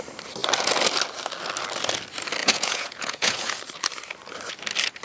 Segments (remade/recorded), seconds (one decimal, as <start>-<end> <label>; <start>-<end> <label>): 0.0-2.4 recorded; 2.4-3.6 remade; 3.6-5.0 recorded